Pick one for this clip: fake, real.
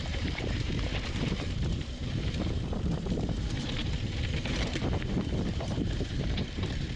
fake